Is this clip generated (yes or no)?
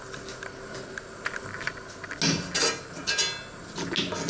no